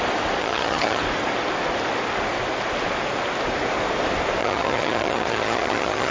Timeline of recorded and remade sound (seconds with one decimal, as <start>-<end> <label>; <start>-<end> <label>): 0.0-0.4 recorded; 0.4-1.0 remade; 1.0-4.4 recorded; 4.4-6.1 remade